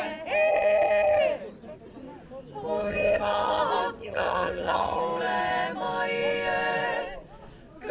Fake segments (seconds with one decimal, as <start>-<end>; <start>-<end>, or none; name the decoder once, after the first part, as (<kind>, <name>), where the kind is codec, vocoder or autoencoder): 0.5-1.2 (vocoder, HiFi-GAN); 2.8-3.6; 4.0-5.0